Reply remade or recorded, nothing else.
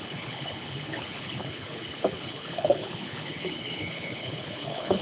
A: remade